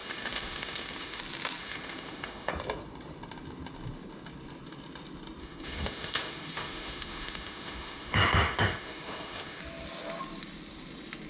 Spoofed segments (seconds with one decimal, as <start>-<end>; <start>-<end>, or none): 0.0-1.2; 1.6-2.5; 5.4-9.6